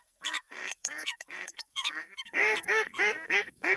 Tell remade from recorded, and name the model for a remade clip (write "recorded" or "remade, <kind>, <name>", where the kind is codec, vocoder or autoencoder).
remade, codec, SNAC